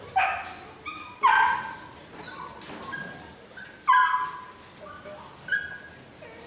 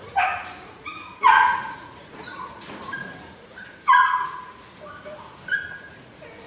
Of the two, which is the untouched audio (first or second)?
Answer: first